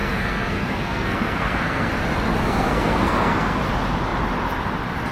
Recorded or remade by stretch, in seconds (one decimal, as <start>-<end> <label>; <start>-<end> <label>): 0.0-1.9 remade; 1.9-2.4 recorded; 2.4-3.6 remade; 3.6-5.1 recorded

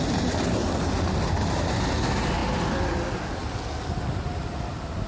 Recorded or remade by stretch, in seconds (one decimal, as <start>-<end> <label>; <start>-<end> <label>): 0.0-5.1 recorded

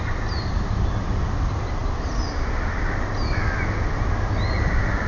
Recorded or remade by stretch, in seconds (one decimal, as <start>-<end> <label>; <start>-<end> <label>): 0.0-5.1 recorded

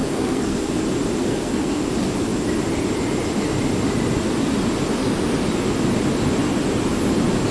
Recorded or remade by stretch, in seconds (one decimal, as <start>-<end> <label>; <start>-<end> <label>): 0.0-0.7 remade; 0.7-1.2 recorded; 1.2-1.9 remade; 1.9-7.5 recorded

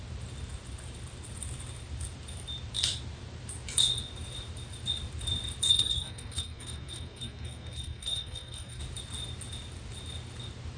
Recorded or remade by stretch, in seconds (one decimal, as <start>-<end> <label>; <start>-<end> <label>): 0.0-5.7 recorded; 5.7-8.8 remade; 8.8-10.8 recorded